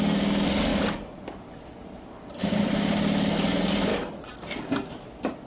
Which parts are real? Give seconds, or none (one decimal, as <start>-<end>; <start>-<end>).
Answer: 0.0-5.5